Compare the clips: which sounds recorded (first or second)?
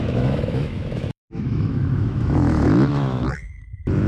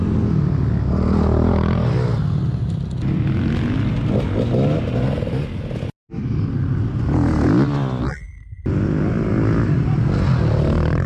second